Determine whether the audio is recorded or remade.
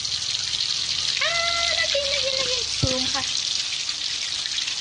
recorded